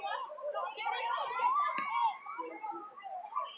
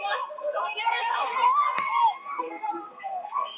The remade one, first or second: second